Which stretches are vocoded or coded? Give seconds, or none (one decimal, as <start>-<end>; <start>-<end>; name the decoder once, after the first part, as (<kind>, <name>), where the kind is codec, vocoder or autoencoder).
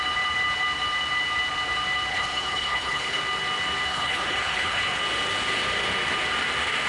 2.1-3.2 (codec, HILCodec); 3.9-5.0